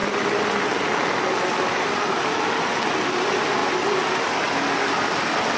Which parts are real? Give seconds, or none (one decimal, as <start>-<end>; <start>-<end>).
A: 0.0-5.6

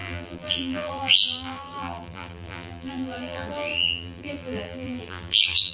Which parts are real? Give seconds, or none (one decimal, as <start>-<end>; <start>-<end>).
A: none

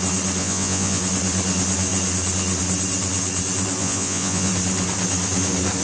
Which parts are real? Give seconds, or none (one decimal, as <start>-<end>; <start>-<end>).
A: 0.0-0.4; 1.0-3.8; 4.5-5.8

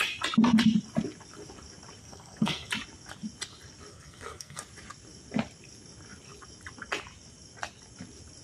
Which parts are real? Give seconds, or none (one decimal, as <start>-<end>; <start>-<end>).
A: 0.0-2.0; 2.7-3.9; 4.6-8.4

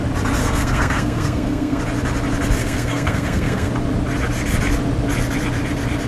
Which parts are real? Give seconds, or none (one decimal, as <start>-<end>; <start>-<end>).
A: 0.0-0.4; 1.8-2.6; 3.7-6.1

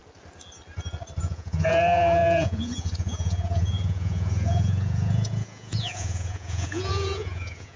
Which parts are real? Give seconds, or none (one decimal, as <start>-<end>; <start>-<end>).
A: 0.0-1.2